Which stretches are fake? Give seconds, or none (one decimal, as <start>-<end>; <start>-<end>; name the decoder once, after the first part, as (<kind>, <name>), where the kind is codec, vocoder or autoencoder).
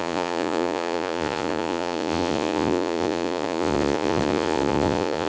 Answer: 0.0-5.3 (vocoder, Vocos)